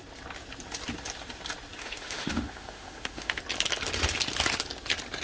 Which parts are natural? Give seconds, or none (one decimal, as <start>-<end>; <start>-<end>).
0.0-1.8; 3.4-5.2

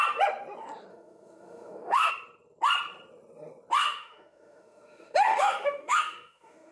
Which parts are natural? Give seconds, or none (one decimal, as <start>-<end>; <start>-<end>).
0.0-0.9; 2.1-3.8

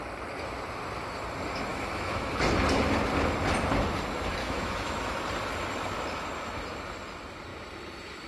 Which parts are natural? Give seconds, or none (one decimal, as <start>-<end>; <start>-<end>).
0.0-1.7; 2.3-4.4; 5.2-8.3

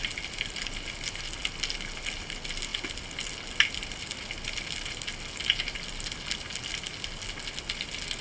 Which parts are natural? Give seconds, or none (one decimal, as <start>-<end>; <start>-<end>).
0.0-8.2

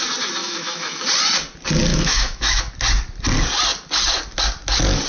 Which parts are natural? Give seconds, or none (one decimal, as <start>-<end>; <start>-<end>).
0.0-0.4; 1.0-1.9; 2.6-5.1

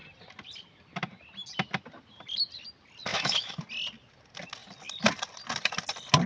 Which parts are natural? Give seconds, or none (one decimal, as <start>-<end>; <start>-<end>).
0.0-3.1; 3.6-6.3

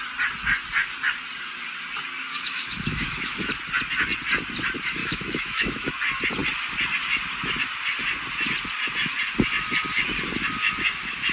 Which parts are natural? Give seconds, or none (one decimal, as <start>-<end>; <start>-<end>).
0.0-2.3; 3.5-5.0; 5.9-11.3

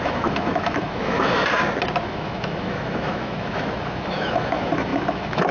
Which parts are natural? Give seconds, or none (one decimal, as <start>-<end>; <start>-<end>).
1.4-2.0